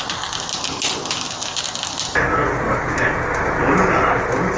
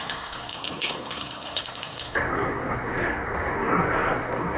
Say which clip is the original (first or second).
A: first